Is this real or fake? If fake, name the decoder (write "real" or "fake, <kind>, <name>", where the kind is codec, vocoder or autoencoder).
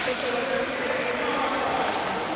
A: real